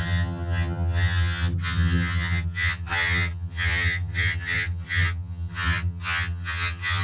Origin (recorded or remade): remade